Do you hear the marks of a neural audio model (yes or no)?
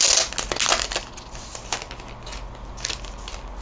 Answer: no